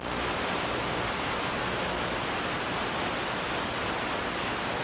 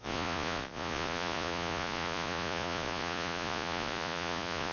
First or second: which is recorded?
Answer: first